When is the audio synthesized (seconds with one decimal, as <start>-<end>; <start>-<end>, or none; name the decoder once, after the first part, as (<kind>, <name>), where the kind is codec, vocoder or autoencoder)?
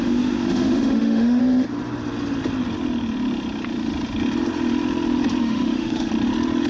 0.0-1.4 (autoencoder, DAC-VAE); 5.4-6.1